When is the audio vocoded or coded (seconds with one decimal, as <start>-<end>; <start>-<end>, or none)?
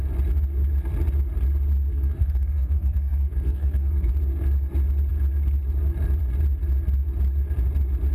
1.9-4.1